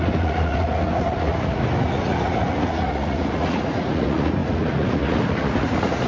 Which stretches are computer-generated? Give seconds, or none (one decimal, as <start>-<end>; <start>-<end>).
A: 0.0-6.1